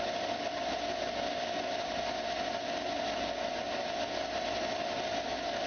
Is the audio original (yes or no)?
yes